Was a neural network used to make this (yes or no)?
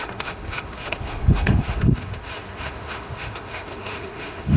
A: yes